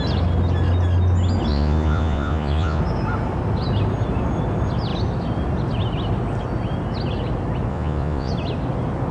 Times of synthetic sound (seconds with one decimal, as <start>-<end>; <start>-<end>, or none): 1.5-2.8; 7.7-8.3